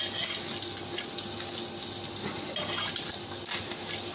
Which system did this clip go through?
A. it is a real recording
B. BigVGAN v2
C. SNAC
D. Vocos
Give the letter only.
A